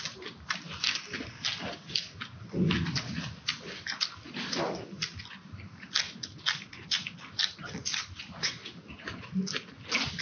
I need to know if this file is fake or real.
real